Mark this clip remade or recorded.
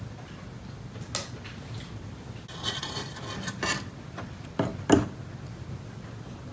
recorded